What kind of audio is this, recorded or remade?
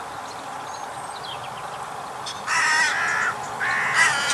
recorded